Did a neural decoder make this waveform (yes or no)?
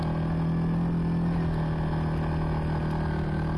no